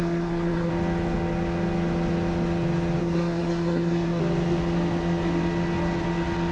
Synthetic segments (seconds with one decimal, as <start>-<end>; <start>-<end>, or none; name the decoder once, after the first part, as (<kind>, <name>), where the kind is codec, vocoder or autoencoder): 0.0-0.7 (codec, SNAC); 3.0-4.2